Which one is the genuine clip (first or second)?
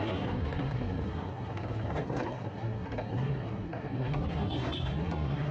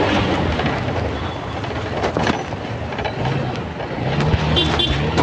second